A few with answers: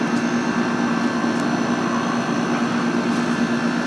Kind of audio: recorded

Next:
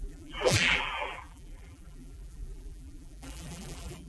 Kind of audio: remade